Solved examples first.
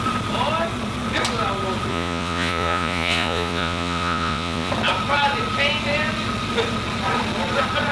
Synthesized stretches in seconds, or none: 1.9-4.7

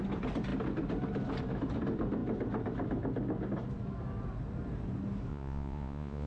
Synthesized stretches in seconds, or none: 5.3-6.3

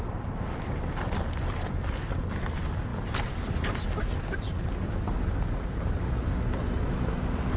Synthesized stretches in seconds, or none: none

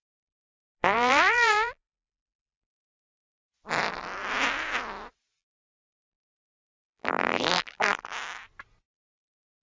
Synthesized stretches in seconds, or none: 0.8-2.8; 5.4-8.1